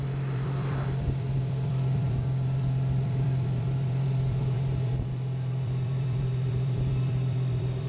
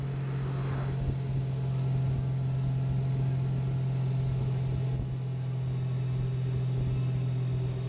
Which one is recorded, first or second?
second